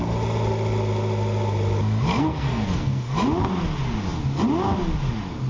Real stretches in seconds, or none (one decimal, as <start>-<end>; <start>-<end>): 0.0-2.1; 3.1-5.5